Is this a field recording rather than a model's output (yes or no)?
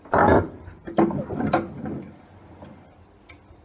yes